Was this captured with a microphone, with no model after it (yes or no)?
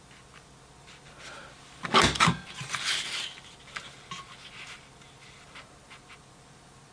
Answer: yes